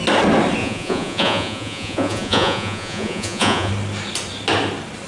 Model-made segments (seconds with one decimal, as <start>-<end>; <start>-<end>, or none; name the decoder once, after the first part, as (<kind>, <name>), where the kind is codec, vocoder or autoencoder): 0.6-3.7 (vocoder, Vocos)